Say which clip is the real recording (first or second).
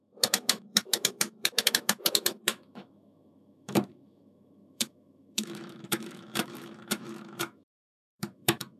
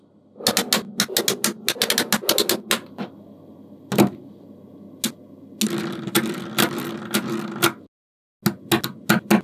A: second